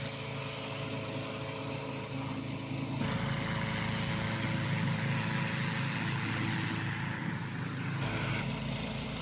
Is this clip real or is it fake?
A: real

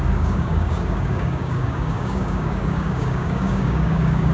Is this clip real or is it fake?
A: fake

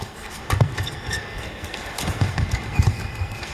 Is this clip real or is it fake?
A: fake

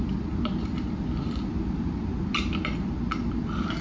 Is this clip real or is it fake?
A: real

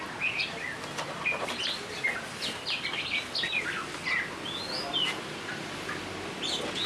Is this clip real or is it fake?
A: real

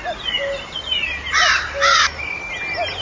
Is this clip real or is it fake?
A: real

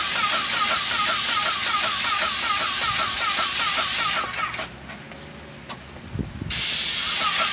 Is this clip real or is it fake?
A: real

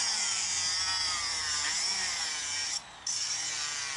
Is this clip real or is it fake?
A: fake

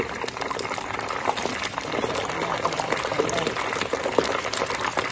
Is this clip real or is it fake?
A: fake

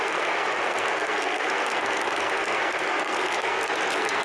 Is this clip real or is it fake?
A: fake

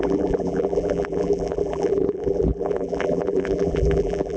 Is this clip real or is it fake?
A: fake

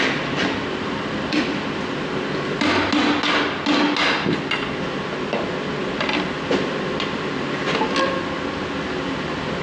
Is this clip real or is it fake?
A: real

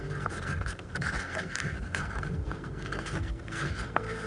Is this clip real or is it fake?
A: fake